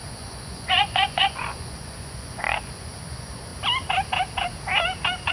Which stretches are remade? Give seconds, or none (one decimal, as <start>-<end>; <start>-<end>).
0.0-3.5